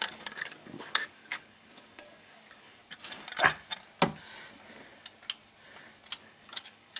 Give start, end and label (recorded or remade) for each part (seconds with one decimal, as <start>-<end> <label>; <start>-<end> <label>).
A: 0.0-2.8 remade; 2.8-6.2 recorded; 6.2-7.0 remade